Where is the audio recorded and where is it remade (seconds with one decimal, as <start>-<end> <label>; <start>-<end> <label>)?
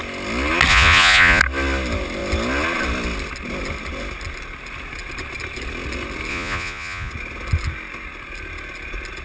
0.0-0.7 recorded; 0.7-1.4 remade; 1.4-6.3 recorded; 6.3-7.1 remade; 7.1-9.2 recorded